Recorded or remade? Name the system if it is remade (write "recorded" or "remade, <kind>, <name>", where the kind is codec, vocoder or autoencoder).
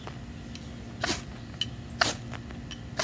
recorded